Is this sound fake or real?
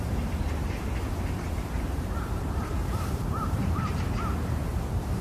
fake